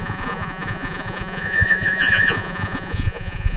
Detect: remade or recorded remade